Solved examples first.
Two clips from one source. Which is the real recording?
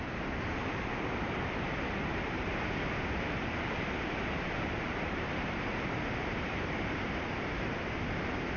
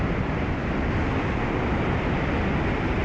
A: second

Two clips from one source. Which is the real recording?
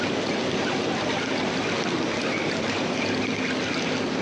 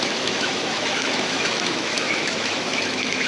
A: first